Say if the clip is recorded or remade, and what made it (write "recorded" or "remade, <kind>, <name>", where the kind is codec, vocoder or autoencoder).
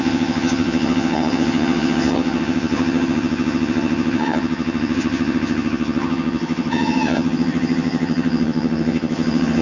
remade, vocoder, HiFi-GAN